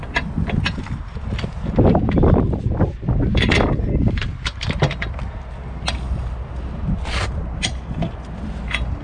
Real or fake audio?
real